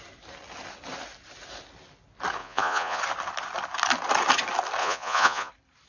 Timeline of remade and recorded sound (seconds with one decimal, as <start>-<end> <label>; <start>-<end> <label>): 0.0-2.4 recorded; 2.4-3.0 remade; 3.0-4.8 recorded; 4.8-5.5 remade; 5.5-5.9 recorded